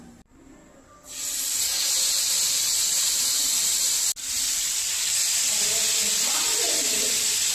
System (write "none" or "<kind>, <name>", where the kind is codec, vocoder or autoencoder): none